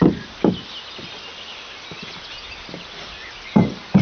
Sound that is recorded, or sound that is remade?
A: recorded